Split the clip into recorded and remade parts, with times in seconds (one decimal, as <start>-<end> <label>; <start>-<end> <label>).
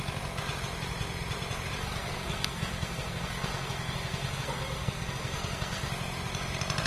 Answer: 0.0-1.8 recorded; 1.8-5.9 remade; 5.9-6.9 recorded